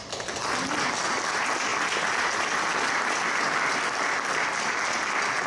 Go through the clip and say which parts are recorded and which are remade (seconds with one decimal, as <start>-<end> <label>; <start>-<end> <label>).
0.0-5.5 recorded